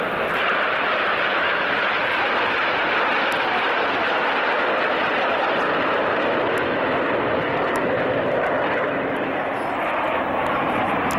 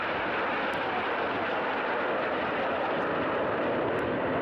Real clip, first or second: second